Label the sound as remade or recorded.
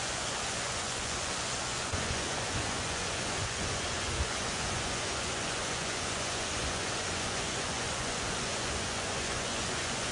remade